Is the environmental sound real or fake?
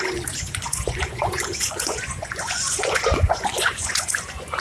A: fake